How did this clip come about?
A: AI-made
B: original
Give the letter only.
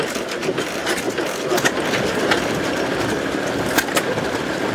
B